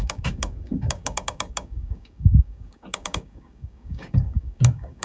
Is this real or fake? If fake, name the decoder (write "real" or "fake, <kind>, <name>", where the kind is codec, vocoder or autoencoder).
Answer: fake, codec, DAC